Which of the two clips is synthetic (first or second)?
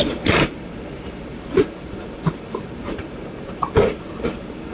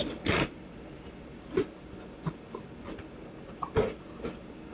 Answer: first